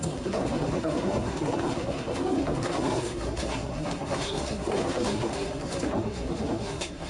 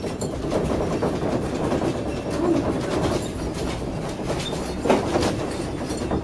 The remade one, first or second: first